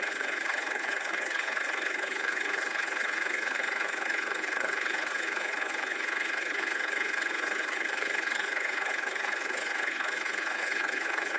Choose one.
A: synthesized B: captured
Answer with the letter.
A